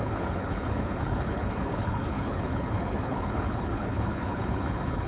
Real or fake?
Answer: fake